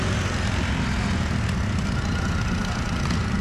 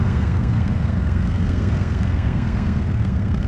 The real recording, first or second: first